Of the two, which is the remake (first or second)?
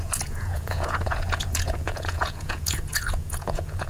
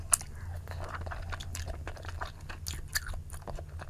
first